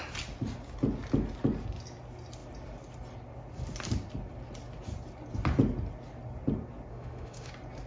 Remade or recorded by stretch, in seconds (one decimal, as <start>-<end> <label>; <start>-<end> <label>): 0.0-6.9 recorded; 6.9-7.5 remade; 7.5-7.9 recorded